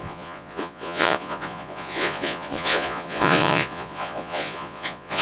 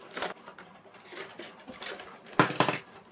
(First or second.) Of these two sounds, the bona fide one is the second